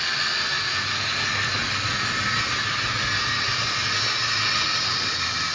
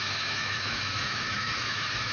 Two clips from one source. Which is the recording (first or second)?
first